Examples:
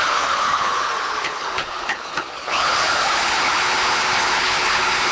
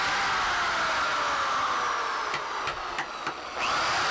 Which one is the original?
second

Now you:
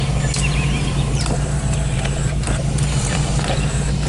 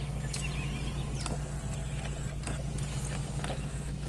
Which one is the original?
second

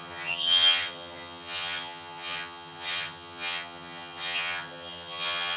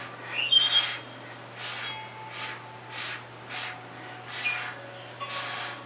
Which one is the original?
second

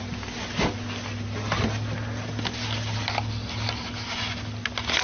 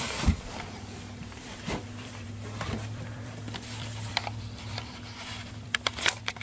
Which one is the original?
first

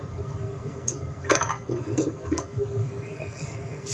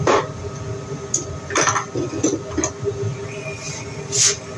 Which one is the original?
second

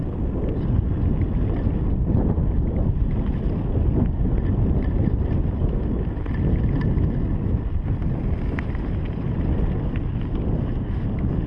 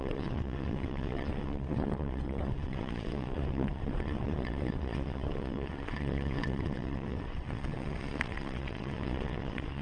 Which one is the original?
first